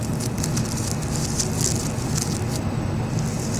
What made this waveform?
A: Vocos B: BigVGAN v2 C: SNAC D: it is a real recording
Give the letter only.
D